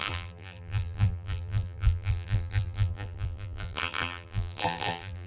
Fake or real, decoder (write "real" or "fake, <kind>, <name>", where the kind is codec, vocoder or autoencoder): fake, vocoder, BigVGAN v2